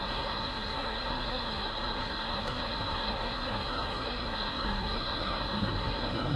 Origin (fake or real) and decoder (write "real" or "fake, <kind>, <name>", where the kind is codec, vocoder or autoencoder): fake, codec, SNAC